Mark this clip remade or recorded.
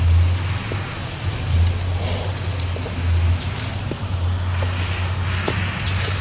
recorded